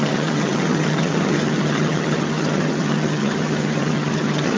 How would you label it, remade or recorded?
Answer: remade